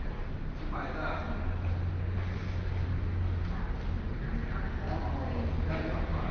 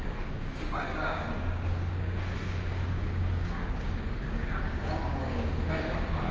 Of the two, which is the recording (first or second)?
first